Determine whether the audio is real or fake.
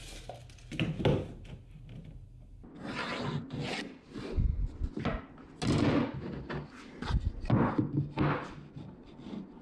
real